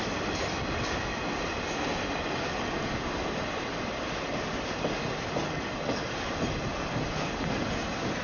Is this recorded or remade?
recorded